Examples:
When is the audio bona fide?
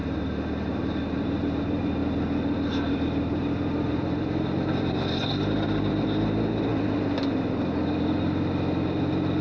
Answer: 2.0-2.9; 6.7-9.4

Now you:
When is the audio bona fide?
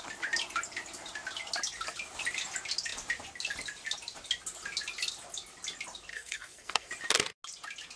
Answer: 0.0-6.1; 6.9-8.0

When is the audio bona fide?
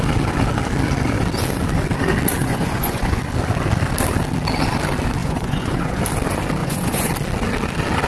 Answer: 0.0-2.4; 3.2-5.2; 6.0-6.6; 7.1-8.1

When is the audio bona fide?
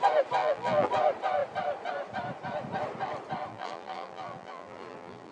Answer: 0.0-0.4; 0.9-3.5